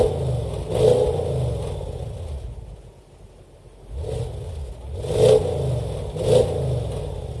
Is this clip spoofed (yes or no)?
no